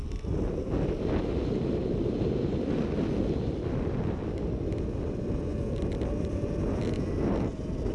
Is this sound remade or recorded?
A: recorded